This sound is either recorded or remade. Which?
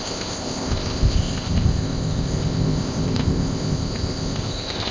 remade